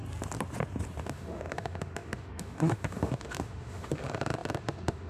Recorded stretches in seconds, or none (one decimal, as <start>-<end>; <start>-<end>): 0.0-1.0